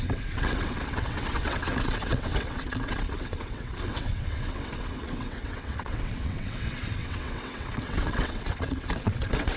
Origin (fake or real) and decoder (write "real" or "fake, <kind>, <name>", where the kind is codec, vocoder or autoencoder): fake, vocoder, WaveNeXt